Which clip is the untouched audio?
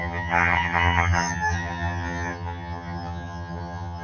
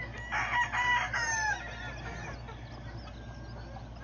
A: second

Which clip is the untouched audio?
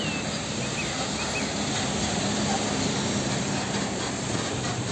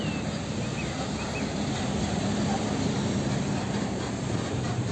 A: first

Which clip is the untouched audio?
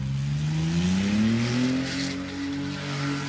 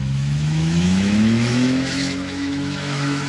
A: first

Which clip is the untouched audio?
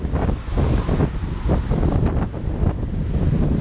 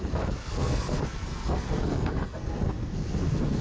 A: first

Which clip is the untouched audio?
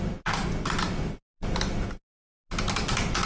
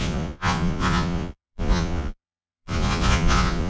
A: first